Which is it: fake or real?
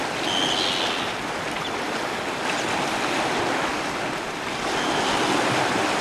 real